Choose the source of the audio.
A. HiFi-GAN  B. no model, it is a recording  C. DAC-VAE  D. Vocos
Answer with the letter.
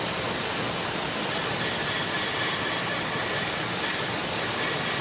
B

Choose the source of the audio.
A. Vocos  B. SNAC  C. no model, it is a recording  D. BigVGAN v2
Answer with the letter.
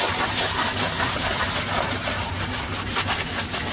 C